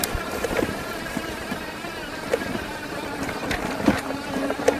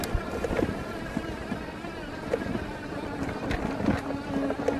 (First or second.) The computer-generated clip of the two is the first